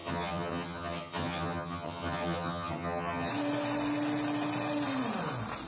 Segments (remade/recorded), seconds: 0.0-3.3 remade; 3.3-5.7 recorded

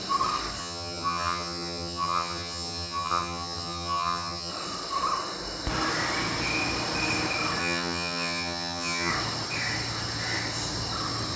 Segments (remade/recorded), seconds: 0.0-0.6 recorded; 0.6-4.5 remade; 4.5-7.6 recorded; 7.6-9.1 remade; 9.1-11.4 recorded

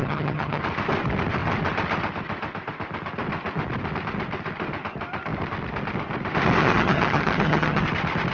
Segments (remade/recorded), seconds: 0.0-0.6 remade; 0.6-6.6 recorded; 6.6-7.8 remade; 7.8-8.3 recorded

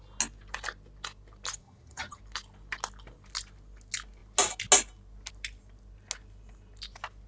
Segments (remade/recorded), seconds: 0.0-1.6 recorded; 1.6-2.2 remade; 2.2-7.3 recorded